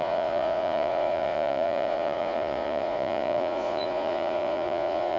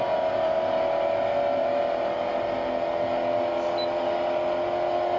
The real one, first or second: second